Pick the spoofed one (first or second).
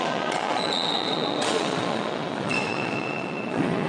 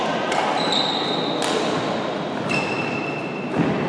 first